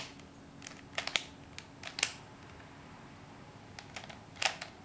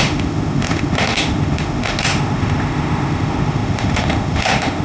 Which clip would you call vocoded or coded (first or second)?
second